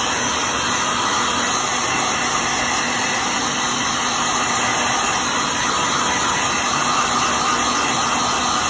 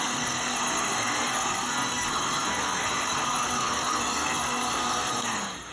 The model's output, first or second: second